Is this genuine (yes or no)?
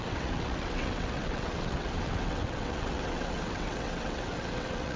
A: no